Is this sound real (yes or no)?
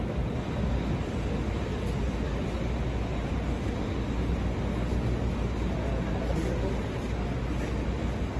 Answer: yes